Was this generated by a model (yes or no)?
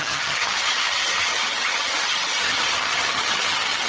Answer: yes